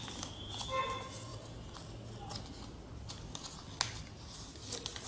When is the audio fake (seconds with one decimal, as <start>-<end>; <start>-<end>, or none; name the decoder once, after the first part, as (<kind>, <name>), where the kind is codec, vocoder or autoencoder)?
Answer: none